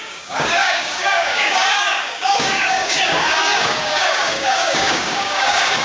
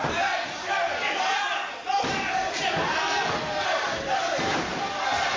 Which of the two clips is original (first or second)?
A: second